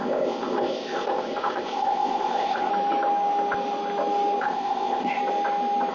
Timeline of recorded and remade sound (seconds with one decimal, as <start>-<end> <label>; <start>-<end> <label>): 0.0-2.7 remade; 2.7-4.4 recorded; 4.4-5.2 remade; 5.2-5.9 recorded